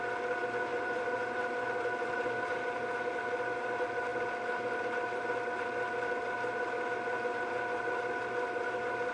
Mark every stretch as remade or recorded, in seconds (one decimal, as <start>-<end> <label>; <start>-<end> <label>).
0.0-0.7 recorded; 0.7-1.4 remade; 1.4-9.1 recorded